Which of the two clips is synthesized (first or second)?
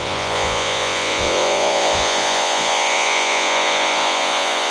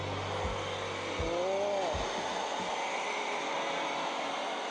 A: first